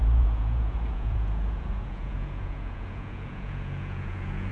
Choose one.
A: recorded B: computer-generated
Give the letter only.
B